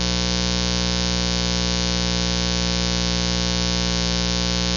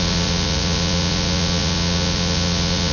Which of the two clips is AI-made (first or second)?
second